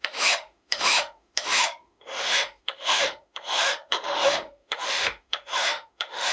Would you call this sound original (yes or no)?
no